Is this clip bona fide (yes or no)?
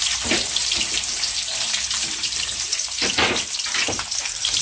no